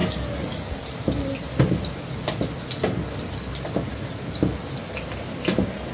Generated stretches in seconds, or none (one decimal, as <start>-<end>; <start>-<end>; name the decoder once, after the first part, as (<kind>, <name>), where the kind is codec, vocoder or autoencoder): none